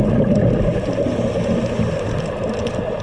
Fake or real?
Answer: real